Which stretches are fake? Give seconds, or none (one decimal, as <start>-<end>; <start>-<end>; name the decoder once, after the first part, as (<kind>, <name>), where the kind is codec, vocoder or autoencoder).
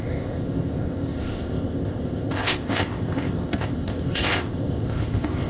0.0-5.5 (codec, ZipCodec)